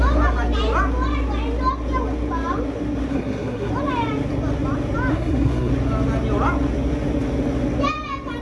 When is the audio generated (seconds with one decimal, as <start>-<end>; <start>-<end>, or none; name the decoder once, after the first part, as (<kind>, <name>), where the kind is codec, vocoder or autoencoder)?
3.1-3.7 (codec, SNAC); 5.1-5.7

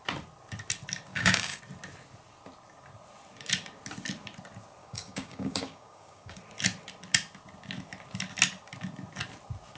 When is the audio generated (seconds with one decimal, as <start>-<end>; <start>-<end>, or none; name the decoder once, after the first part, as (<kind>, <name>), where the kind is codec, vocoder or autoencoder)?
1.1-1.6 (codec, DAC); 4.8-6.4